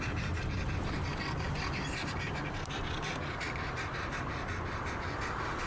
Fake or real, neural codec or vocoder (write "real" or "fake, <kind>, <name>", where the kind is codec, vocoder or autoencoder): real